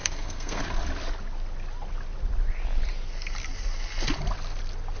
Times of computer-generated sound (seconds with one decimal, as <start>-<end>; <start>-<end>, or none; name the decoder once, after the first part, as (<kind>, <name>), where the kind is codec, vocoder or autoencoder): 0.0-0.6 (codec, SNAC)